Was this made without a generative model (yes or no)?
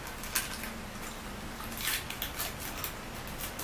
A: yes